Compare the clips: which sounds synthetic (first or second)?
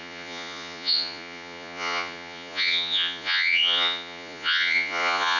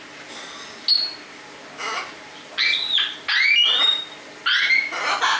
first